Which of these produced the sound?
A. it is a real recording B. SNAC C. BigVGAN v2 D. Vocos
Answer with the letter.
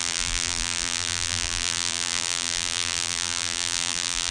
C